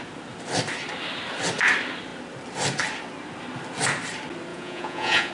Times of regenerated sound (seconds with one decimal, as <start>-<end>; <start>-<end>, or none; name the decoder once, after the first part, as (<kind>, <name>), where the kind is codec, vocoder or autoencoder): 4.5-5.3 (vocoder, Vocos)